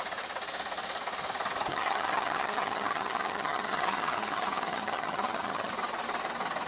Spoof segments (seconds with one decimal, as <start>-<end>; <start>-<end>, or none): 1.7-5.7